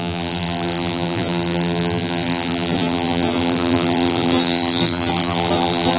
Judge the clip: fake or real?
fake